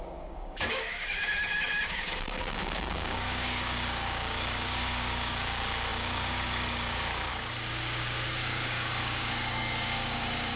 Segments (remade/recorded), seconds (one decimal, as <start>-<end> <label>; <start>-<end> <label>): 0.0-10.6 remade